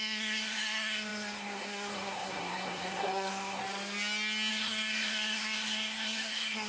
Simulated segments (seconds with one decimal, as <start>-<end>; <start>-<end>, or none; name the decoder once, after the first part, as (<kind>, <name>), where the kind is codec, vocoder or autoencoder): 0.0-3.6 (codec, SNAC); 4.5-6.7